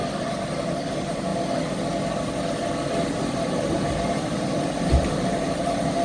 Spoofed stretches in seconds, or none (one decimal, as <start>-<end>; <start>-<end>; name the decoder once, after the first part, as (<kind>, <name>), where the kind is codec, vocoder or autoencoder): 0.9-1.3 (vocoder, BigVGAN v2); 3.1-6.0